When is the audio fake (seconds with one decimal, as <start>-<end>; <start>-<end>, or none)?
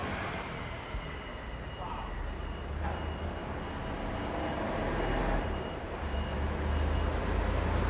0.0-0.8